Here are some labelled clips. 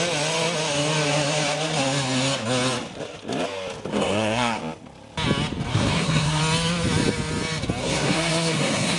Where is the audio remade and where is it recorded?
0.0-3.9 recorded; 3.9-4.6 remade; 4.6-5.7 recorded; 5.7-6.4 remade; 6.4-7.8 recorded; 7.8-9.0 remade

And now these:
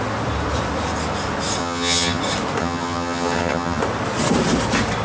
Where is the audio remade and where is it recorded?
0.0-1.6 recorded; 1.6-2.2 remade; 2.2-2.6 recorded; 2.6-3.8 remade; 3.8-5.0 recorded